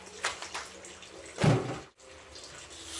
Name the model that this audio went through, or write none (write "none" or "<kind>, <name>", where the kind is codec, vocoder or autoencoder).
none